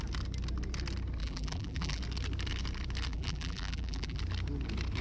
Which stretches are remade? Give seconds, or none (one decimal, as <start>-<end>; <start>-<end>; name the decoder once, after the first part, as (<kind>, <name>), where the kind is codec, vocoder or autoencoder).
1.2-2.0 (vocoder, BigVGAN v2); 3.1-4.2